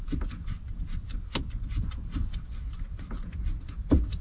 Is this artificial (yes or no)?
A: no